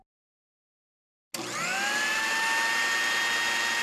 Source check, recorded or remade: recorded